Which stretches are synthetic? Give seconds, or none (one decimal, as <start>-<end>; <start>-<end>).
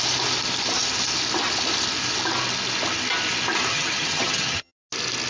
3.7-4.7